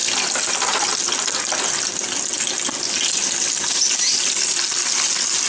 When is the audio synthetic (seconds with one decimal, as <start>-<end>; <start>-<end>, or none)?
none